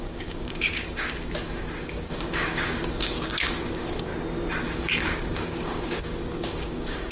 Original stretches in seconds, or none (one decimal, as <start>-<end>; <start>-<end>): 4.1-4.6

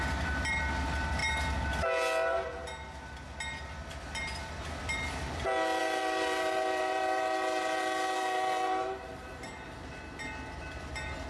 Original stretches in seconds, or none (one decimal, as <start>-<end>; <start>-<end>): 0.0-5.8; 9.5-11.3

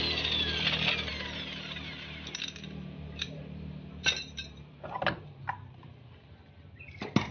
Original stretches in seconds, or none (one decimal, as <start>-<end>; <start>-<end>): 0.0-1.1; 5.4-7.3